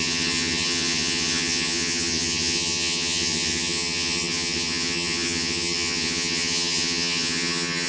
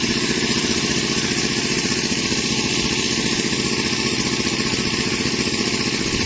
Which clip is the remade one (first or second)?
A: first